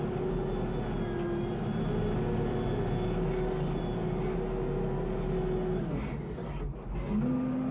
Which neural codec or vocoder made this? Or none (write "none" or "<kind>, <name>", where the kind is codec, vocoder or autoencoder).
none